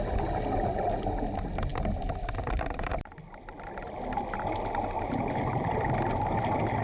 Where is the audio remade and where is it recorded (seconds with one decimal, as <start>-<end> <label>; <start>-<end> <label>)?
0.0-6.8 recorded